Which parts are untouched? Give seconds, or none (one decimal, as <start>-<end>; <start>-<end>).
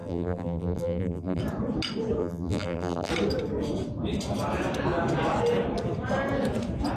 1.4-2.2; 3.1-7.0